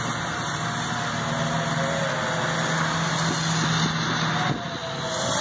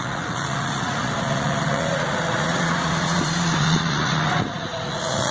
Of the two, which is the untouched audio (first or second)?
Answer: first